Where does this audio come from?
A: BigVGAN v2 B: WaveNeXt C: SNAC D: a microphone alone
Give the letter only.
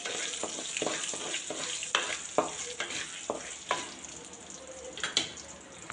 D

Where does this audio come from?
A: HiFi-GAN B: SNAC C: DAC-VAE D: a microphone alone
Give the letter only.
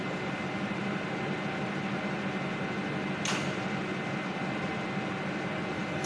D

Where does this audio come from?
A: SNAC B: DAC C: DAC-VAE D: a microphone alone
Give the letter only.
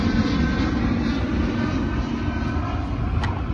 D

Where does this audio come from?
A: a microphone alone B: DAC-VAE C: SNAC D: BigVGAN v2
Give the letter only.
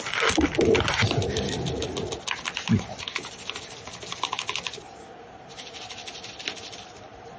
A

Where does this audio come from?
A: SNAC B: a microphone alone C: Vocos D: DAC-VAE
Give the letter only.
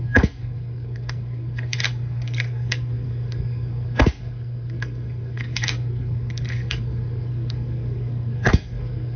A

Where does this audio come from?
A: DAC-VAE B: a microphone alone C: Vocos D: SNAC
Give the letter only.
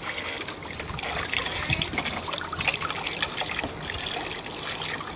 B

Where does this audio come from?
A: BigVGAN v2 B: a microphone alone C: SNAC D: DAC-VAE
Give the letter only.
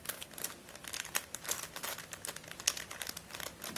B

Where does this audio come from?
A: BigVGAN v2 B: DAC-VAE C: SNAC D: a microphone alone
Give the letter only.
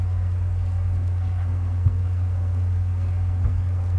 C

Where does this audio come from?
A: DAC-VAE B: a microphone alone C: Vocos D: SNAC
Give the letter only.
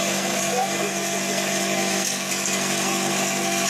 D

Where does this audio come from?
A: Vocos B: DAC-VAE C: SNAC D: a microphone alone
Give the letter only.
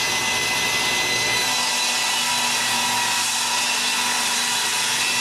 D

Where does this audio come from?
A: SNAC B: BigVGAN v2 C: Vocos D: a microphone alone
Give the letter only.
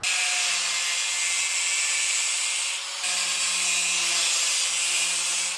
D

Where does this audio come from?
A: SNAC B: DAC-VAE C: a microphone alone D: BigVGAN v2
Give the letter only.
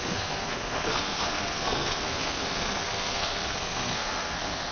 A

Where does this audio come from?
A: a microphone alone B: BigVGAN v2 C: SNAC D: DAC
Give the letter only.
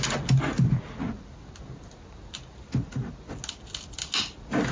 A